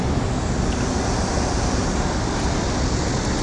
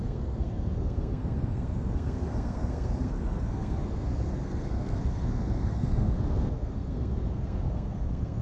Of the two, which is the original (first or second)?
first